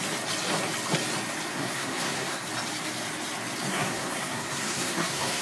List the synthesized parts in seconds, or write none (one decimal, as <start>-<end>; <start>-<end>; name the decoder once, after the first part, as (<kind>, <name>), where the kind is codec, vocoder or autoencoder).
1.5-2.5 (codec, SNAC); 3.7-5.4